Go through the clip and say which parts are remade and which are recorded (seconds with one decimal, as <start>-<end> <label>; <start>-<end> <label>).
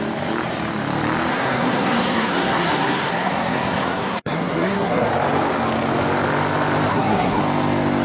0.0-1.3 recorded; 1.3-5.1 remade; 5.1-6.9 recorded; 6.9-7.4 remade; 7.4-8.0 recorded